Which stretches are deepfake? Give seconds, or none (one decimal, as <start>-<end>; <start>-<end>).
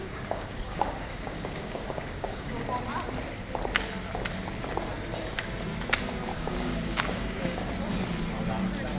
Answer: 0.0-2.6; 6.3-7.7